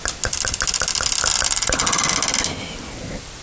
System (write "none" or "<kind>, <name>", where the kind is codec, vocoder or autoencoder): none